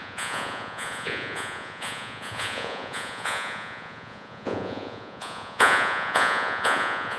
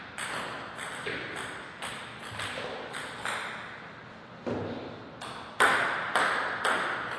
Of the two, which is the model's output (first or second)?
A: first